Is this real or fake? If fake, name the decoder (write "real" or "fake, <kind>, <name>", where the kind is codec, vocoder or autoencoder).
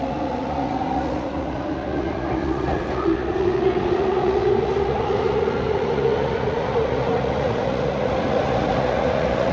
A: fake, vocoder, Vocos